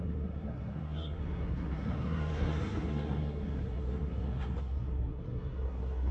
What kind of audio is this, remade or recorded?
remade